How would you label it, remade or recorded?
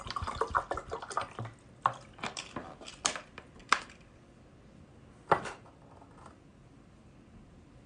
recorded